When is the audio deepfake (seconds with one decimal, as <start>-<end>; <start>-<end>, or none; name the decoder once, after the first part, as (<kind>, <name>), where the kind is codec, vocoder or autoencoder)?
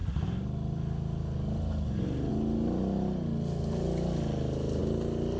none